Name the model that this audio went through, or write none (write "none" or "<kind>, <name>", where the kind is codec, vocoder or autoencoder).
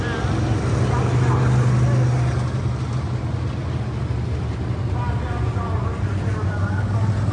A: none